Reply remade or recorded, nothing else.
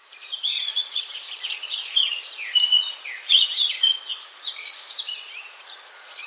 remade